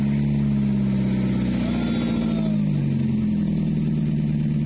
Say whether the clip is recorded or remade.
recorded